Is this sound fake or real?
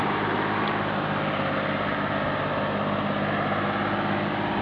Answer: real